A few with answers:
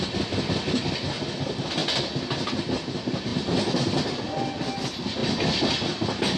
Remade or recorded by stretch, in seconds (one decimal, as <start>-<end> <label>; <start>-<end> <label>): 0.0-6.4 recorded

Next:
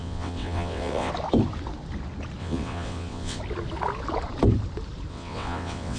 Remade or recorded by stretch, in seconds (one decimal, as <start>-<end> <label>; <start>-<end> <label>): 0.0-1.1 remade; 1.1-2.4 recorded; 2.4-3.4 remade; 3.4-5.1 recorded; 5.1-6.0 remade

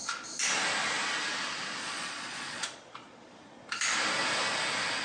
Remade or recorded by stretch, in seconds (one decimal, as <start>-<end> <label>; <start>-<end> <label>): 0.0-1.8 recorded; 1.8-3.6 remade; 3.6-5.0 recorded

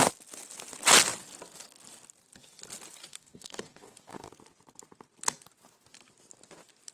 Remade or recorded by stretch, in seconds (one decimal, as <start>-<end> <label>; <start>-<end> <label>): 0.0-3.1 recorded; 3.1-4.3 remade; 4.3-6.9 recorded